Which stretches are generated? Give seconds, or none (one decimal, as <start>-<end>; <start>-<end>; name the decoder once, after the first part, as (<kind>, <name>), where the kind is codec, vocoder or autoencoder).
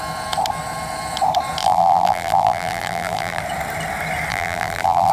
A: 1.6-3.4 (vocoder, BigVGAN v2); 4.3-5.1